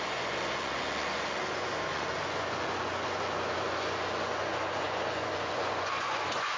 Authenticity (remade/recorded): remade